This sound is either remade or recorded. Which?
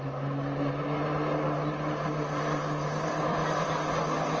recorded